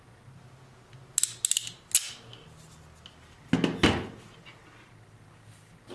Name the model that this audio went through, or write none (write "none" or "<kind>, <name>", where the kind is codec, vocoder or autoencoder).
none